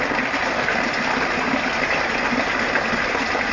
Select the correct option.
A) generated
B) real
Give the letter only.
B